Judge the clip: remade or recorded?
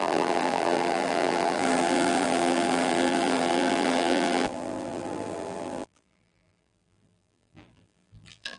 remade